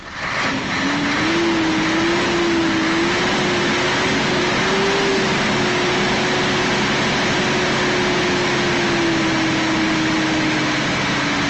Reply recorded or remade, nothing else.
recorded